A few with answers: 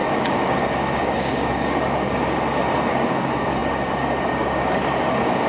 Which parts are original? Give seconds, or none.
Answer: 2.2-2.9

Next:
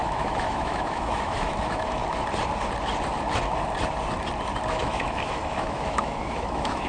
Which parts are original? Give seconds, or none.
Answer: 2.0-4.7

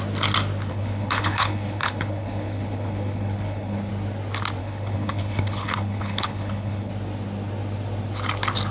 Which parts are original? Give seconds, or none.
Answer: 0.0-0.7; 3.9-4.6; 6.9-8.7

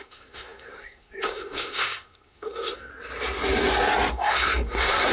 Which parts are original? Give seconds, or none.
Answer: 2.9-4.1